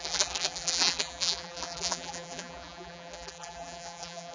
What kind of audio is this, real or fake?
fake